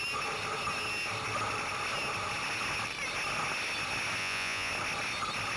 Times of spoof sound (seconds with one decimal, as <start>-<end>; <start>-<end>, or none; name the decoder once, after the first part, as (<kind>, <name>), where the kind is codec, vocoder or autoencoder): 4.2-4.7 (vocoder, Vocos)